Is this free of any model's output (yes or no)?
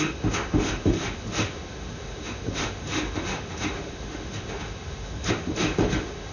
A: no